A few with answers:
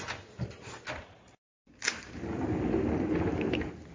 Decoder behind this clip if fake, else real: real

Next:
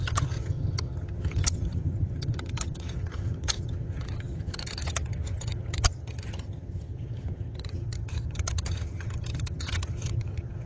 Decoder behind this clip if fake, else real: fake, vocoder, HiFi-GAN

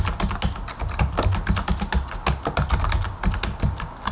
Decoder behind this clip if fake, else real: real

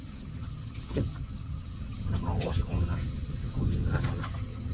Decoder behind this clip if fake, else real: fake, vocoder, HiFi-GAN